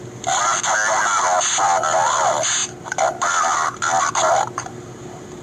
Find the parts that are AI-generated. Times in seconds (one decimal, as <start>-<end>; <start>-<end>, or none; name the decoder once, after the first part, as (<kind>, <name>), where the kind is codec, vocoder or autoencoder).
none

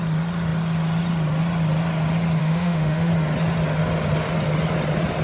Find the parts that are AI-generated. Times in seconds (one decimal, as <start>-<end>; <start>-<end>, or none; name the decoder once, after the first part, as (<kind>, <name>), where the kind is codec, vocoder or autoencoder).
2.4-3.1 (autoencoder, DAC-VAE)